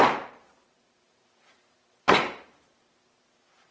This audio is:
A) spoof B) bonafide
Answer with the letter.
A